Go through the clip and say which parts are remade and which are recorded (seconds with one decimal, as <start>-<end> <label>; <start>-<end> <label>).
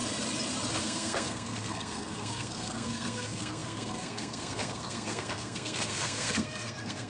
0.0-0.8 recorded; 0.8-7.1 remade